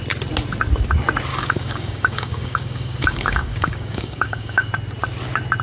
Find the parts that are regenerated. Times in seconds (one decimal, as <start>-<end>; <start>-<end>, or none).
1.3-4.7